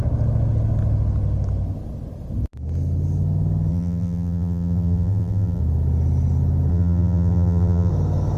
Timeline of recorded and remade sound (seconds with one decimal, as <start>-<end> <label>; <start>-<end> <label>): 0.0-3.7 recorded; 3.7-5.6 remade; 5.6-6.7 recorded; 6.7-7.9 remade; 7.9-8.4 recorded